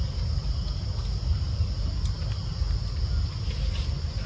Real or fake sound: real